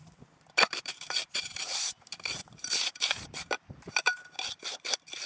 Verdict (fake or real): fake